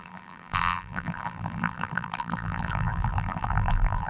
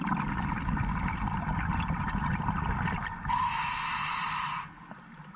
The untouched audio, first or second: second